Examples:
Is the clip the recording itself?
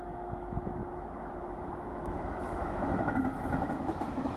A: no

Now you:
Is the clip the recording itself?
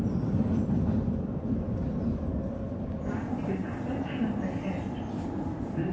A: yes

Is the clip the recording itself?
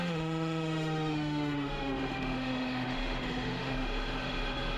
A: no